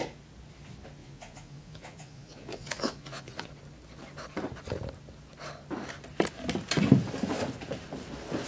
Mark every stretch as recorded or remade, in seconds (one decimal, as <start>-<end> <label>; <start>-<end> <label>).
0.0-1.0 recorded; 1.0-3.5 remade; 3.5-8.5 recorded

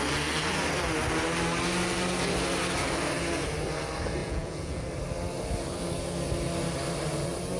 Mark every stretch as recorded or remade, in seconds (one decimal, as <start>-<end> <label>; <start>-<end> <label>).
0.0-4.2 recorded; 4.2-4.8 remade; 4.8-7.6 recorded

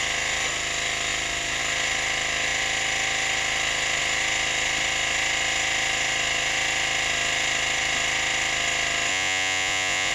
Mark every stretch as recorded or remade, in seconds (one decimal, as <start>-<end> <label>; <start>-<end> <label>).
0.0-9.1 recorded; 9.1-10.1 remade

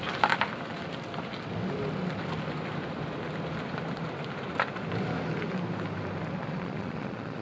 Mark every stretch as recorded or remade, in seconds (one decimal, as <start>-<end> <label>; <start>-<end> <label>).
0.0-6.4 recorded; 6.4-7.4 remade